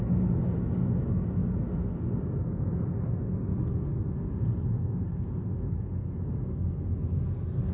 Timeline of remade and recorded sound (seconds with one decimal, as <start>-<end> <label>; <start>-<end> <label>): 0.0-7.7 recorded